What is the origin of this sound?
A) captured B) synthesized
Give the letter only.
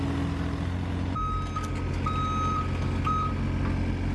A